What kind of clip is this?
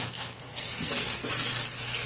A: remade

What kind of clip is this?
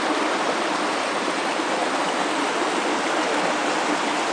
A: recorded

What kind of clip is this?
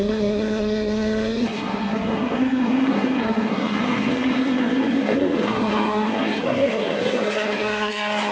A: remade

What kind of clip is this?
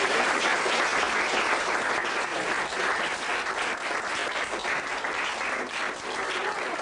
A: recorded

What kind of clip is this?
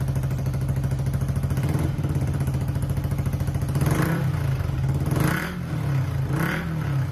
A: recorded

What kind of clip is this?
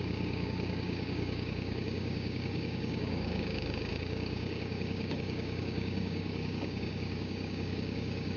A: remade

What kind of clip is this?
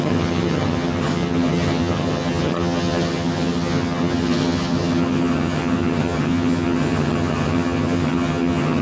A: remade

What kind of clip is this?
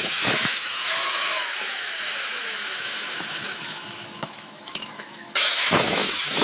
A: remade